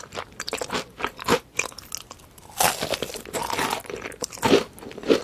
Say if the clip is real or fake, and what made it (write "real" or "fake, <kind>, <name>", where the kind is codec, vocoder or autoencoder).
real